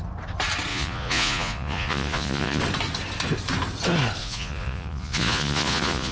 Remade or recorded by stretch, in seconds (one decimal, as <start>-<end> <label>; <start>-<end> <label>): 0.0-0.7 recorded; 0.7-2.6 remade; 2.6-4.2 recorded; 4.2-6.1 remade